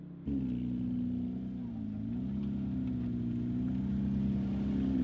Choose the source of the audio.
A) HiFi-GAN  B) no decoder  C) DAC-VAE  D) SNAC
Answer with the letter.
B